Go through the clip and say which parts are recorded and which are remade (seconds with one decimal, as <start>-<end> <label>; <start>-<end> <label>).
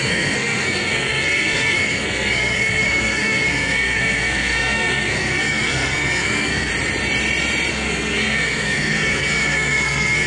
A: 0.0-6.7 remade; 6.7-7.7 recorded; 7.7-10.3 remade